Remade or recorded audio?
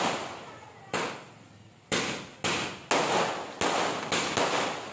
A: recorded